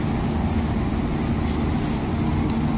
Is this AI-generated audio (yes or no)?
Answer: no